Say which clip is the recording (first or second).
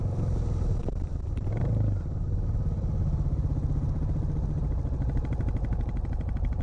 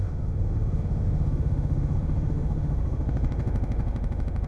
first